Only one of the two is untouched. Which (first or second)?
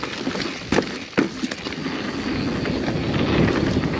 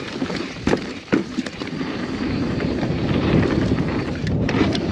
first